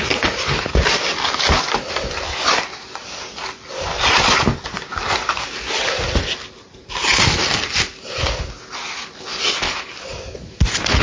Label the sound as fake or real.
real